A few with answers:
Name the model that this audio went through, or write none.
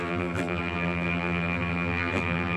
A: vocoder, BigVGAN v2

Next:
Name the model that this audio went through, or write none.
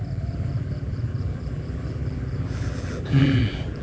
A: vocoder, BigVGAN v2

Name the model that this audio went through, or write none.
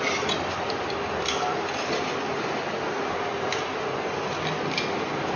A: none